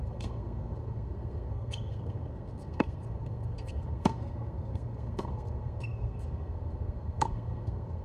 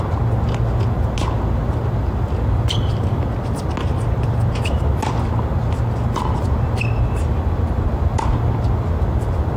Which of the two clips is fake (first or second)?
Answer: first